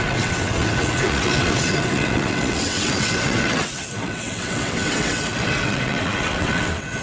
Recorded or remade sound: remade